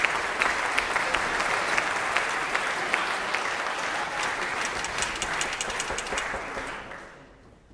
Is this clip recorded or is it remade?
recorded